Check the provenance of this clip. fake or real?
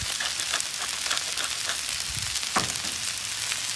real